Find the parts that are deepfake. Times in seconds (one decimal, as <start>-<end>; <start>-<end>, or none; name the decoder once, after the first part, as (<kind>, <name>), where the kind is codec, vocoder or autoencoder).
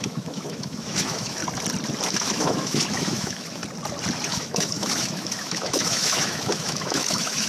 0.0-1.4 (autoencoder, DAC-VAE); 2.1-3.6; 4.3-7.5